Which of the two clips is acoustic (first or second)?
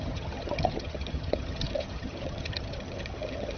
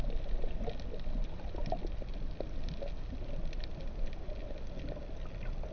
second